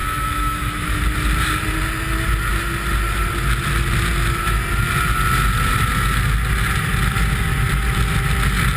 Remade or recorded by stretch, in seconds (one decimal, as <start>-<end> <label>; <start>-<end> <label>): 0.0-1.0 remade; 1.0-8.8 recorded